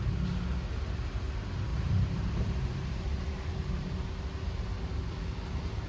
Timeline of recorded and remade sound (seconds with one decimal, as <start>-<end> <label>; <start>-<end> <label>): 0.0-1.7 recorded; 1.7-4.1 remade; 4.1-5.9 recorded